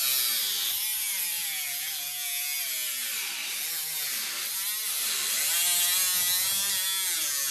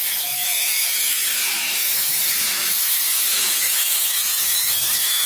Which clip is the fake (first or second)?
second